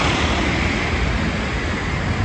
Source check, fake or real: real